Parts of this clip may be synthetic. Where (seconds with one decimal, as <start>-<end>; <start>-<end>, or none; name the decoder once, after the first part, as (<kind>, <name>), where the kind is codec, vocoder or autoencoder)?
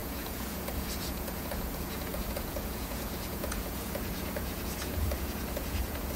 0.0-6.2 (vocoder, Vocos)